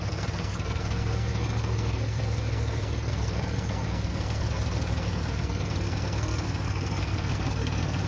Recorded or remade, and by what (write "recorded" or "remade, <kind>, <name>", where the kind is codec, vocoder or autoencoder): remade, codec, SNAC